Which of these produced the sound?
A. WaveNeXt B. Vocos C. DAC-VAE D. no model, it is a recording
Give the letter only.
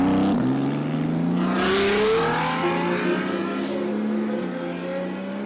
D